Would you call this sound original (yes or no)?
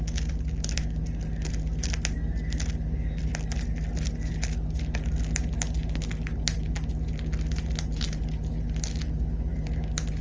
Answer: yes